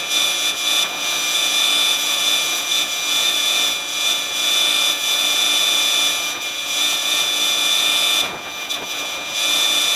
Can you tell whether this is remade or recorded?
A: remade